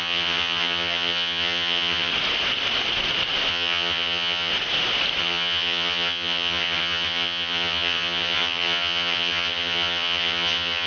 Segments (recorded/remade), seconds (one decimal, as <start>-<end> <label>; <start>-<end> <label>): 0.0-2.1 remade; 2.1-3.5 recorded; 3.5-4.5 remade; 4.5-5.2 recorded; 5.2-10.9 remade